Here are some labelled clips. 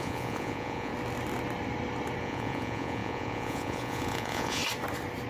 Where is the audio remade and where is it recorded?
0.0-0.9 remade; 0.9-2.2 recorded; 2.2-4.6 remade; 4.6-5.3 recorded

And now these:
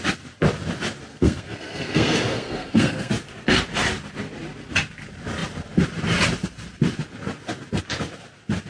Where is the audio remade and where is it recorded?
0.0-1.1 recorded; 1.1-3.1 remade; 3.1-8.7 recorded

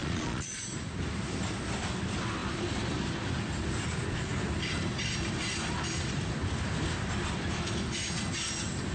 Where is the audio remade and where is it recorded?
0.0-0.6 remade; 0.6-8.9 recorded

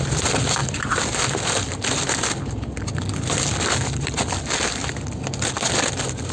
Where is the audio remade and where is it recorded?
0.0-6.3 recorded

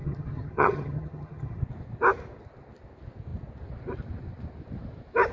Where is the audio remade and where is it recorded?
0.0-1.6 remade; 1.6-5.3 recorded

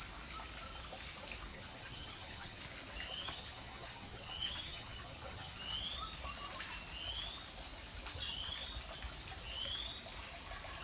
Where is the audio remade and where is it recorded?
0.0-1.5 recorded; 1.5-2.6 remade; 2.6-3.2 recorded; 3.2-5.6 remade; 5.6-10.8 recorded

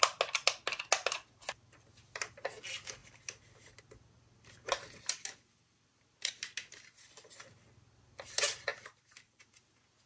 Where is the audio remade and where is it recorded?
0.0-3.0 recorded; 3.0-3.8 remade; 3.8-8.7 recorded; 8.7-9.4 remade; 9.4-10.1 recorded

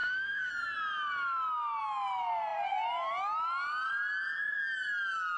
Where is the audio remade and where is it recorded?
0.0-0.5 remade; 0.5-5.4 recorded